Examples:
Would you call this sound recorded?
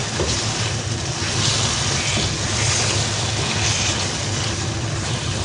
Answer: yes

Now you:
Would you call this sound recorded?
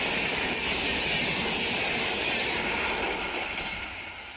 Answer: yes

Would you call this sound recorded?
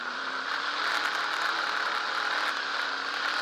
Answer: yes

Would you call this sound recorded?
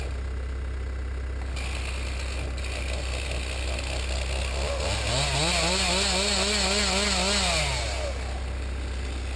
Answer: yes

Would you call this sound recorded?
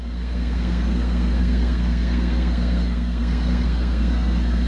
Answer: no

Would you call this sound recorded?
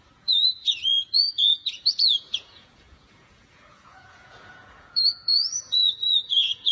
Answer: no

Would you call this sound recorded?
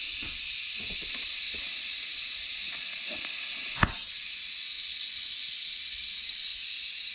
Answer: no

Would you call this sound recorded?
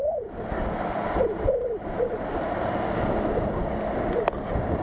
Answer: yes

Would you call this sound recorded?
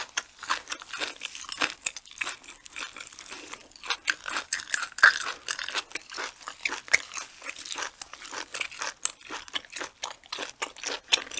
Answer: yes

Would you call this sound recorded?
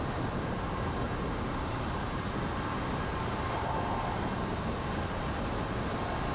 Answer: yes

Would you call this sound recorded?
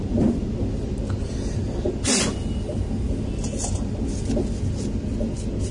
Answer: yes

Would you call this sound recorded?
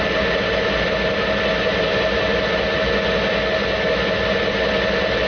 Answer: yes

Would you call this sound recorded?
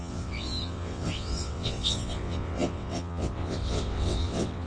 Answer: no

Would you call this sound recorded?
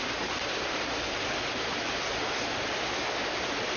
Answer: yes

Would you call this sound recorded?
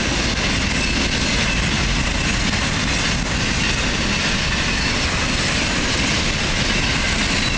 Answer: yes